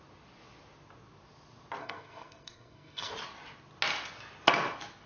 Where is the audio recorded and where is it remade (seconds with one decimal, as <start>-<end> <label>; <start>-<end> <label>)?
0.0-1.8 recorded; 1.8-3.1 remade; 3.1-5.1 recorded